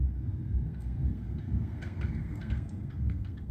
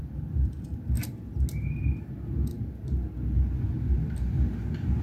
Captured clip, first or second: second